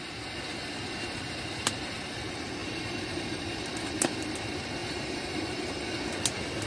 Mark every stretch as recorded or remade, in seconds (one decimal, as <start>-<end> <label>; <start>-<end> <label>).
0.0-0.5 recorded; 0.5-1.7 remade; 1.7-2.6 recorded; 2.6-3.6 remade; 3.6-4.8 recorded; 4.8-5.8 remade; 5.8-6.7 recorded